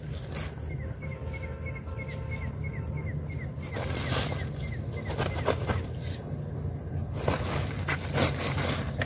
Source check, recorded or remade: recorded